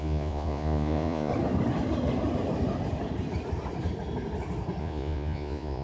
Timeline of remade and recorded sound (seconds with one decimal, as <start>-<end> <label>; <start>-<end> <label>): 0.0-1.3 remade; 1.3-4.8 recorded; 4.8-5.8 remade